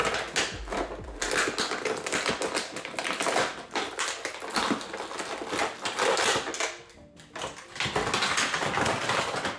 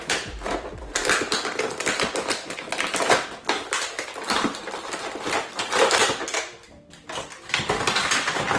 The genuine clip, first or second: first